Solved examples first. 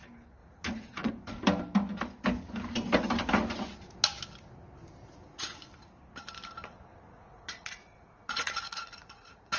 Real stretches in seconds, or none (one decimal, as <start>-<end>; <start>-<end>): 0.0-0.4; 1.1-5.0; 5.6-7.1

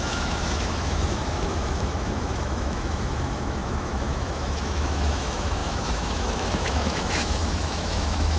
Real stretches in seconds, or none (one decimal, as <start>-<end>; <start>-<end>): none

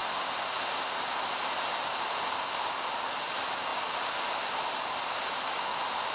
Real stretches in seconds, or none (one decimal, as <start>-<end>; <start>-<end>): 0.0-6.1

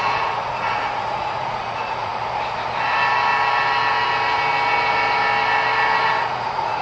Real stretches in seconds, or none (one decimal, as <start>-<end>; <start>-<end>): 2.1-6.2

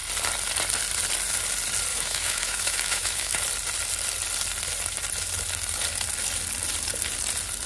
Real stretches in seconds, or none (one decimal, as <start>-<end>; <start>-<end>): 0.0-1.9; 3.4-7.7